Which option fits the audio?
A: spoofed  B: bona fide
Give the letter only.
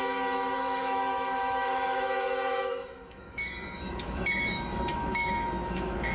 A